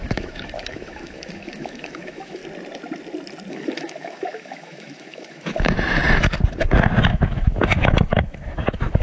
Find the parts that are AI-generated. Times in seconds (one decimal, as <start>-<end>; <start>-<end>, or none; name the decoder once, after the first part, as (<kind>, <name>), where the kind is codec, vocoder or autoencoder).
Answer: 0.0-2.4 (autoencoder, DAC-VAE); 3.5-6.0; 7.1-9.0